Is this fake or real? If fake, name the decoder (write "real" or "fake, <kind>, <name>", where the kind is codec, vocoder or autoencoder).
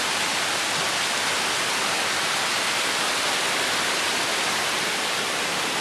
real